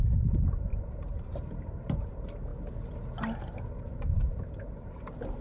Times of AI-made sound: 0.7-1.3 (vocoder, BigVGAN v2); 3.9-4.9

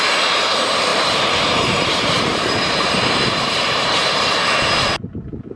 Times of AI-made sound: 0.9-4.3 (vocoder, BigVGAN v2)

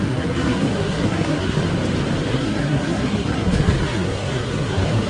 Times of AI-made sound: 0.0-1.6 (codec, SNAC); 2.3-5.1

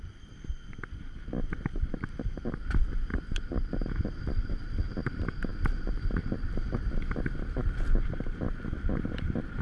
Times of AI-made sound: 0.0-9.6 (vocoder, BigVGAN v2)

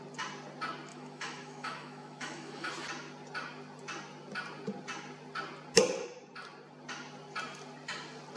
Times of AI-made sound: 0.9-2.7 (autoencoder, DAC-VAE)